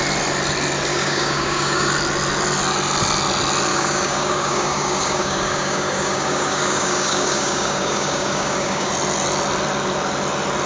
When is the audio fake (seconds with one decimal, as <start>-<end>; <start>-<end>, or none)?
0.9-1.9; 3.7-8.9